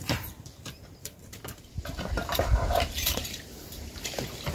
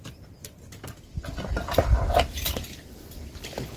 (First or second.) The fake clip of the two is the first